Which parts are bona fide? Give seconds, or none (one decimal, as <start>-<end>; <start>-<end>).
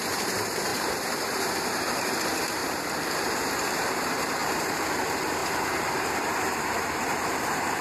2.6-3.2